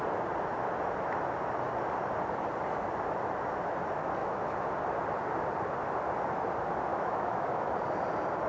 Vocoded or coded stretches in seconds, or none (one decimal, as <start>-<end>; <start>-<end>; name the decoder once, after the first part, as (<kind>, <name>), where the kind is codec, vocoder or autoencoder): 4.2-4.7 (autoencoder, DAC-VAE); 6.9-7.7